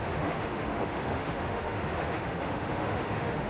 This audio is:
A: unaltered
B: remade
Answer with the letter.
B